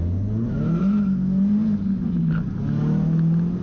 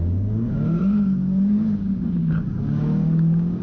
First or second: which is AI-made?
second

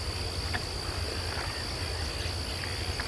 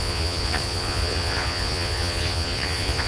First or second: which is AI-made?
second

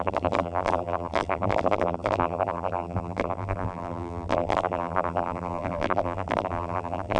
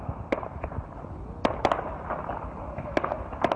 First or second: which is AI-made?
first